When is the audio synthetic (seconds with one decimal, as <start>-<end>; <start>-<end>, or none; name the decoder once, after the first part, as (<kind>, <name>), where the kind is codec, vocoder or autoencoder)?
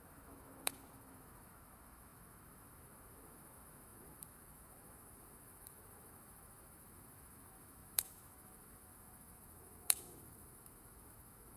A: 0.0-11.6 (autoencoder, DAC-VAE)